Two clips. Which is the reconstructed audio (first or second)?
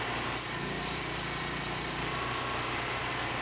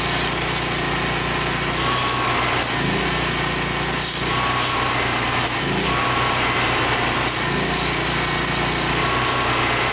first